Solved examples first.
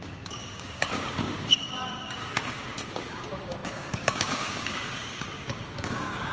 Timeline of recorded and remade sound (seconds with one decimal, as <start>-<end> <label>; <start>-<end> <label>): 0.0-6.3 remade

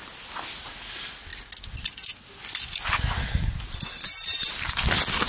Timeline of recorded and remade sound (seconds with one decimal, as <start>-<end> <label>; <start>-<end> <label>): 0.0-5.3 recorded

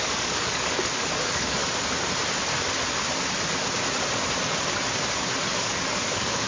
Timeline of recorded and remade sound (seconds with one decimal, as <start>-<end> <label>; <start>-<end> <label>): 0.0-1.6 remade; 1.6-5.5 recorded; 5.5-6.5 remade

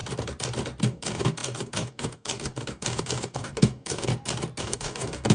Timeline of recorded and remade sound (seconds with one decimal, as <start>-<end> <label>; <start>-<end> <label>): 0.0-0.8 recorded; 0.8-4.1 remade; 4.1-4.6 recorded; 4.6-5.3 remade

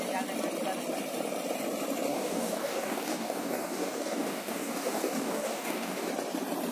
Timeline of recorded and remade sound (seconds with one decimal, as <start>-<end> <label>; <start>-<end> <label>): 0.0-2.1 recorded; 2.1-6.1 remade; 6.1-6.7 recorded

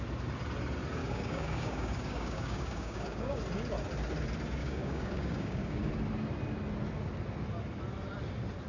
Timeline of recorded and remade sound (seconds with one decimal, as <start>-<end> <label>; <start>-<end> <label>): 0.0-1.0 recorded; 1.0-3.4 remade; 3.4-4.6 recorded; 4.6-5.9 remade; 5.9-8.7 recorded

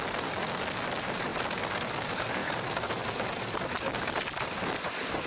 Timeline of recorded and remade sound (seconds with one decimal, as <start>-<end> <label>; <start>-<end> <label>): 0.0-5.3 recorded